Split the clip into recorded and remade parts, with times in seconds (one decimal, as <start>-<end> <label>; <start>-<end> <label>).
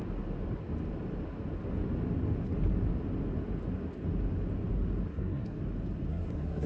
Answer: 0.0-5.1 recorded; 5.1-5.6 remade; 5.6-6.1 recorded; 6.1-6.7 remade